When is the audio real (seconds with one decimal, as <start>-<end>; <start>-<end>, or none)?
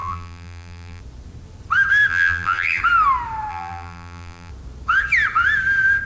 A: 1.0-2.1; 2.8-3.5; 4.5-6.1